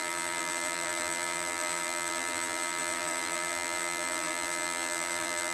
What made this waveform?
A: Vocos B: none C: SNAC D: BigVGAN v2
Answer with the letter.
D